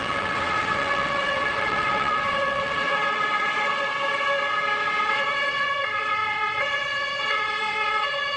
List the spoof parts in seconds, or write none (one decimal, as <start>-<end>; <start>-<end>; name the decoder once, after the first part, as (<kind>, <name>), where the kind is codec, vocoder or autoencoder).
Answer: 0.0-3.9 (vocoder, WaveNeXt); 5.0-8.4